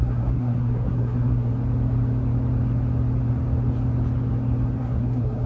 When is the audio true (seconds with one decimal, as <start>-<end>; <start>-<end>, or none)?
1.5-4.8

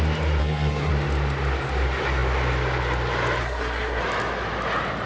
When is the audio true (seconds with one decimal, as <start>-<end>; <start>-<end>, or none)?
0.0-0.4; 0.9-3.4; 4.0-5.1

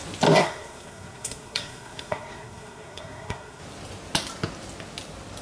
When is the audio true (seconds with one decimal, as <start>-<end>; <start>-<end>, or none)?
0.0-0.4; 3.6-5.4

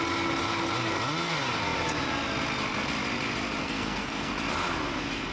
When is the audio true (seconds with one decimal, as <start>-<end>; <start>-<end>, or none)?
0.0-3.6; 4.3-5.3

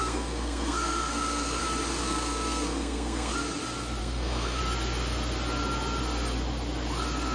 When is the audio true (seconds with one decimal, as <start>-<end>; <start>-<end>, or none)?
1.6-2.0; 3.3-4.0; 4.6-7.3

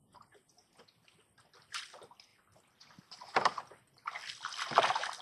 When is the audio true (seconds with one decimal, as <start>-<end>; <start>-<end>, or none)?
0.0-5.2